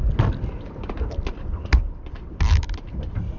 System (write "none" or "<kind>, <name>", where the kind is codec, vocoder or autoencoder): none